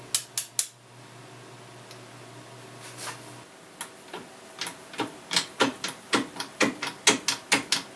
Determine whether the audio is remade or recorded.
recorded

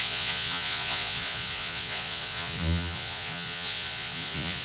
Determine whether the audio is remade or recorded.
remade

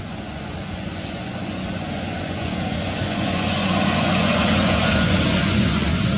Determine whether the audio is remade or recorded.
remade